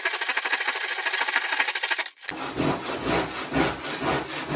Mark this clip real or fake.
real